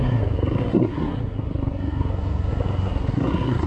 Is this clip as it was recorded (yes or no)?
no